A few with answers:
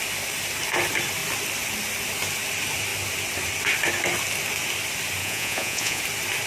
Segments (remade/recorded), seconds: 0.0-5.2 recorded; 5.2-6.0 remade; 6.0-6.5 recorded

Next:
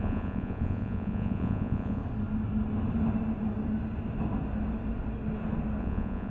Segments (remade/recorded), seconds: 0.0-2.0 remade; 2.0-5.8 recorded; 5.8-6.3 remade

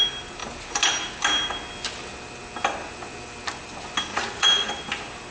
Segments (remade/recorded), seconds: 0.0-4.1 recorded; 4.1-4.7 remade; 4.7-5.3 recorded

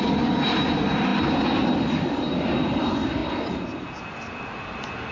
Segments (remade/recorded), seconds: 0.0-5.1 recorded

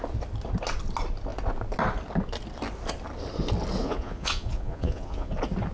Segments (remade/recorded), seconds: 0.0-3.8 recorded; 3.8-5.3 remade; 5.3-5.7 recorded